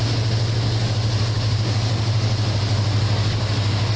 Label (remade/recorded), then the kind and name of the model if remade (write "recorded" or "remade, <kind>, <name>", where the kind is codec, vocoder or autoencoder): recorded